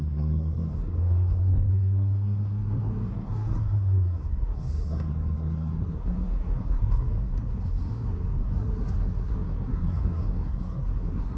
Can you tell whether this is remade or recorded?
remade